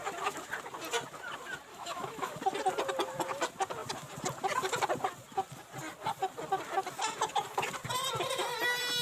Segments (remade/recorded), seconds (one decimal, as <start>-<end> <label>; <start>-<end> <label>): 0.0-1.7 recorded; 1.7-2.4 remade; 2.4-9.0 recorded